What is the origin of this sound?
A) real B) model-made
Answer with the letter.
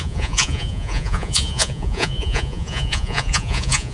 B